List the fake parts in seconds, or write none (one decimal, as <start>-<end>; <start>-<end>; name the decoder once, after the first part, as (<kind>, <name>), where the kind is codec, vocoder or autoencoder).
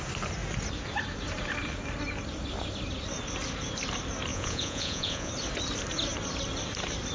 4.3-5.3 (vocoder, Vocos)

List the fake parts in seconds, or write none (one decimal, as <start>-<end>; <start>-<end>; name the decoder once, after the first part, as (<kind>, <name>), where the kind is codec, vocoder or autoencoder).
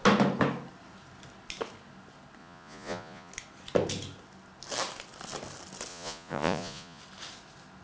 2.4-3.3 (vocoder, Vocos); 5.9-7.0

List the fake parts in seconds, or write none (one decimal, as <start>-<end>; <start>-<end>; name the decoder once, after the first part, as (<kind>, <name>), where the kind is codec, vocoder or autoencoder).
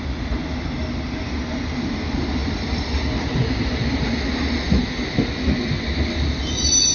2.4-2.9 (vocoder, BigVGAN v2)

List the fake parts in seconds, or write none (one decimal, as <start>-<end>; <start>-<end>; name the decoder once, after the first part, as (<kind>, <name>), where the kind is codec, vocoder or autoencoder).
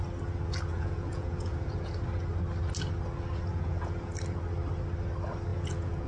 0.7-1.9 (vocoder, Vocos); 3.5-4.1; 5.5-6.1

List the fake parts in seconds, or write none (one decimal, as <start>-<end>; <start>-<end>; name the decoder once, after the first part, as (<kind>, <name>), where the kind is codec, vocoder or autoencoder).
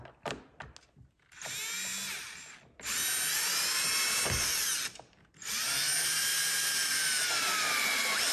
0.0-0.6 (vocoder, BigVGAN v2)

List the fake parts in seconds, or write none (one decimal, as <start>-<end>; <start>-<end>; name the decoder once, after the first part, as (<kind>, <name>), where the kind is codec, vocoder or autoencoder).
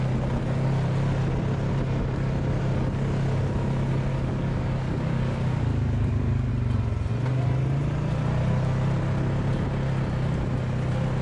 4.1-6.5 (codec, DAC)